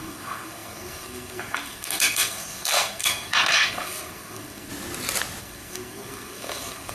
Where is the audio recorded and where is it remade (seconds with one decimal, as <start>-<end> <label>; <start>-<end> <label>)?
0.0-4.7 remade; 4.7-5.4 recorded; 5.4-6.9 remade